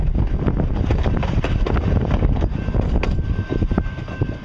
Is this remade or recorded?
remade